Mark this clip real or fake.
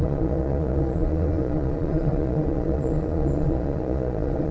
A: fake